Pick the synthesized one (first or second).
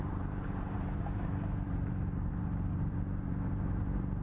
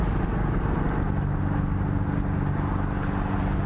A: first